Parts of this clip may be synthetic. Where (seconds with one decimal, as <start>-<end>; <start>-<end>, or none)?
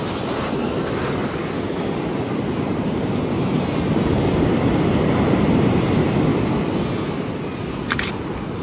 0.0-1.2; 2.6-6.3; 7.7-8.6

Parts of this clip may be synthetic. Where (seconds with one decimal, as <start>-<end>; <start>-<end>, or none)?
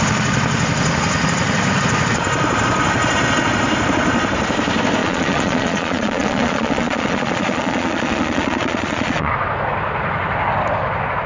5.0-9.3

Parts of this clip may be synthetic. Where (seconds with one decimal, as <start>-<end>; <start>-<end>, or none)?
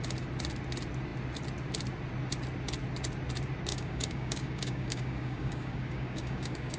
3.7-6.8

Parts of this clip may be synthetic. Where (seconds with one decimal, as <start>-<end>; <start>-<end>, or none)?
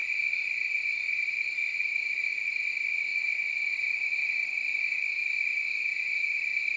2.5-5.2; 6.2-6.8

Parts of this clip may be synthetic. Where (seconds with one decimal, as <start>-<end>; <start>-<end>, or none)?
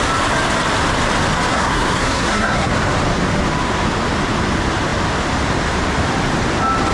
1.5-2.7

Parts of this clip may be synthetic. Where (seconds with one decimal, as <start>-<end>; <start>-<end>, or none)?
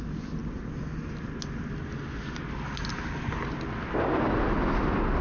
none